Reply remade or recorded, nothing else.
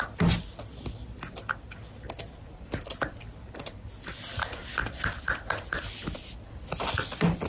recorded